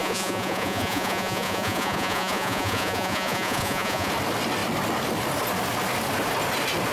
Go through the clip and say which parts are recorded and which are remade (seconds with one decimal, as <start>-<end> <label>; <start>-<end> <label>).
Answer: 0.0-4.1 remade; 4.1-6.9 recorded